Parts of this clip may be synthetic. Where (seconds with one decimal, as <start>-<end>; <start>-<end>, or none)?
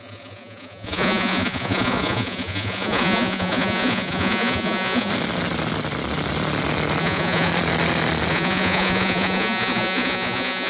0.0-5.1; 7.0-7.5; 8.3-10.7